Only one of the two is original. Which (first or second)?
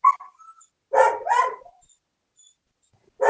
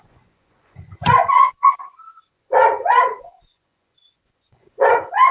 first